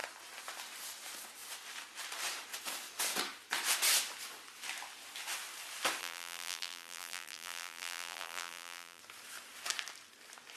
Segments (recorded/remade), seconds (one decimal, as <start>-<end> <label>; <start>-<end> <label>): 0.0-6.0 recorded; 6.0-9.0 remade; 9.0-10.6 recorded